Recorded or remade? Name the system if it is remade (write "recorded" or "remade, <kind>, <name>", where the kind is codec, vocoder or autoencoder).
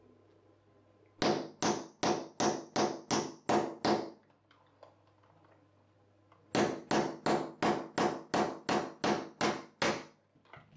recorded